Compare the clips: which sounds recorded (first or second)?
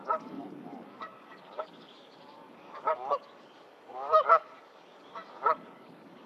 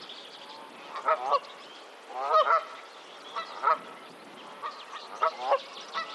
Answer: second